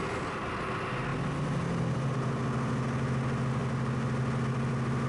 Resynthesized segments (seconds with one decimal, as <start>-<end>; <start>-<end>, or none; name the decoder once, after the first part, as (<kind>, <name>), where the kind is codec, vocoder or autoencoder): none